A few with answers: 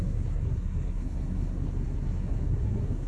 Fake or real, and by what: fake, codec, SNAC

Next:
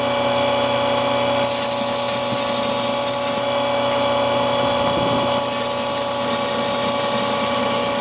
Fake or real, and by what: real